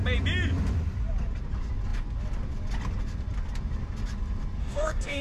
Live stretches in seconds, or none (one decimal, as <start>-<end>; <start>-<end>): 0.0-4.6